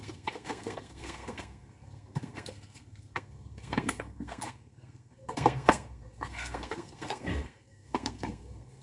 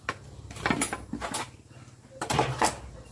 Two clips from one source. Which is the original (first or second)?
second